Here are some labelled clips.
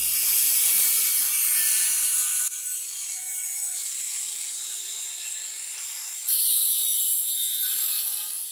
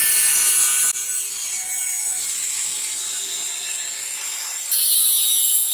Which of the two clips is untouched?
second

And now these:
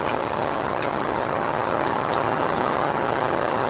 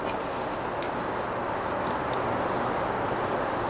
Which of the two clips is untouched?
second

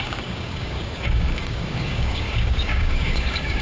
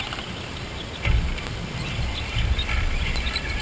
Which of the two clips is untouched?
second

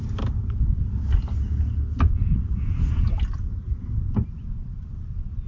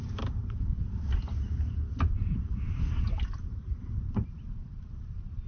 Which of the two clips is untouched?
first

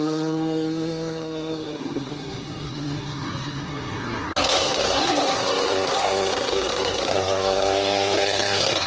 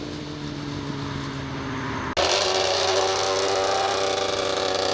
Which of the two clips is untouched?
second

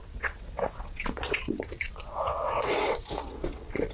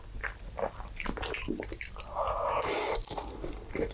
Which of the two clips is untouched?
second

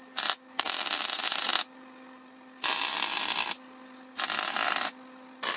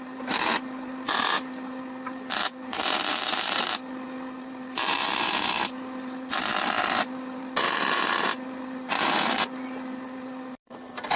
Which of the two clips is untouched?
first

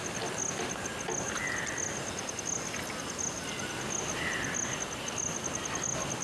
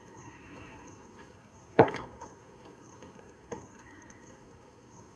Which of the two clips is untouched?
first